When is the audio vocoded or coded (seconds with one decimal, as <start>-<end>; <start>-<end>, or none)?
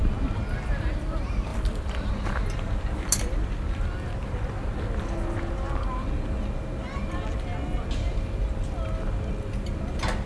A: 1.5-2.1